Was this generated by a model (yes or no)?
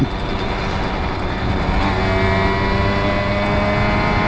no